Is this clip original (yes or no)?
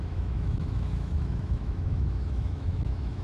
no